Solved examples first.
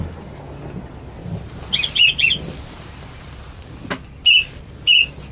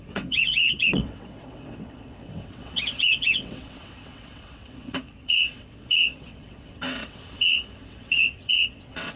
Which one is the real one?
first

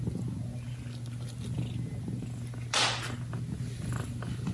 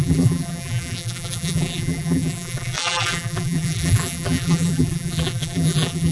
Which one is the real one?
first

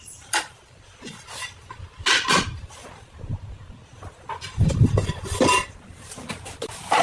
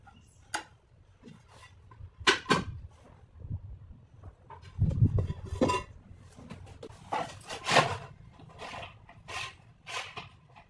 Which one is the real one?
second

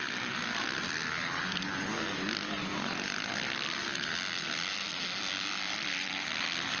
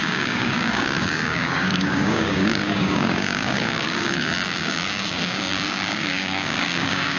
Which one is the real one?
first